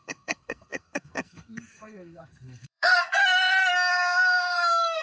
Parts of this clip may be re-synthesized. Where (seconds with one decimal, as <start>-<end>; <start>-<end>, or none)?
0.0-3.2; 3.9-5.0